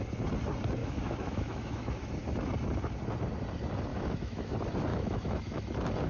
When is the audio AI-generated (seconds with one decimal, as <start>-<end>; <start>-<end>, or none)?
0.8-2.1; 3.9-4.5; 4.9-5.6